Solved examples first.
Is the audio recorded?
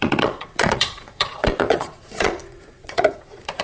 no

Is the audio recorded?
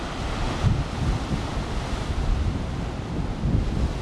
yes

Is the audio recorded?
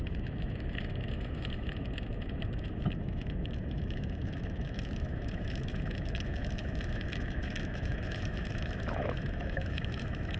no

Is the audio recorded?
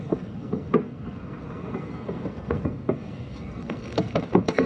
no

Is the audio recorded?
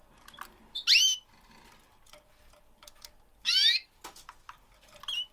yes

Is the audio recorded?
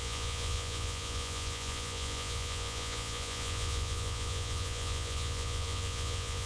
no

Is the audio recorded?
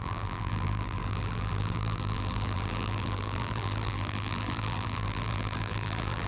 no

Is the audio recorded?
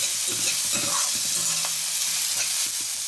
yes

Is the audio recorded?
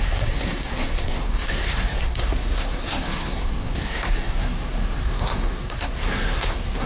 no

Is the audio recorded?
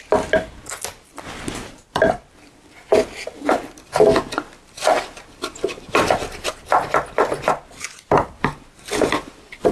yes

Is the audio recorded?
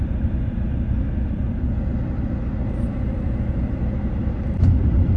yes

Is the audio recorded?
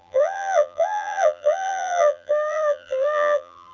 no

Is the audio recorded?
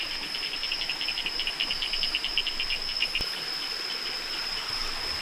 yes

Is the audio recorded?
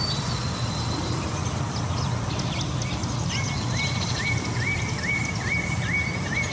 yes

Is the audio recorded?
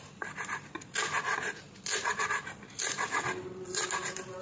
yes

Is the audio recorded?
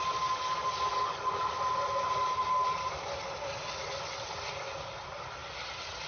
yes